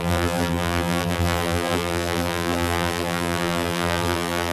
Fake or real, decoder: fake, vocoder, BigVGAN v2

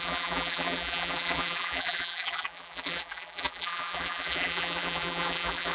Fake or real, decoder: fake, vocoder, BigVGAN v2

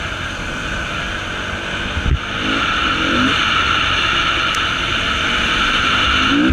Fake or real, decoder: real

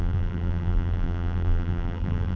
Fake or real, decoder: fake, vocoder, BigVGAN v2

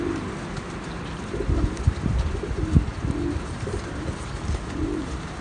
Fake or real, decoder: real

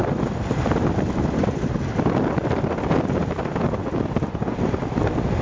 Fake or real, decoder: fake, vocoder, BigVGAN v2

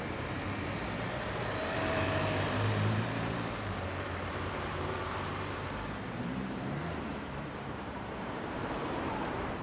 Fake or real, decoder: fake, vocoder, BigVGAN v2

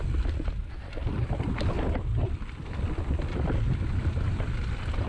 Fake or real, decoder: real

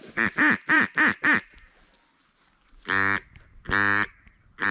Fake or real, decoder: fake, vocoder, BigVGAN v2